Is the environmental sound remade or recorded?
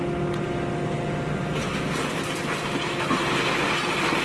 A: recorded